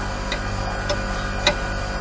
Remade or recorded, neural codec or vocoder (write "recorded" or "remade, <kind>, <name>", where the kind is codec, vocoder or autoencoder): recorded